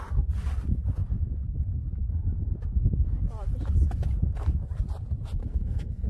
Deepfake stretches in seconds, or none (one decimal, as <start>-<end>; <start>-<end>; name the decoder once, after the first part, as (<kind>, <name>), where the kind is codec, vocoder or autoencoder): 5.4-6.1 (codec, SNAC)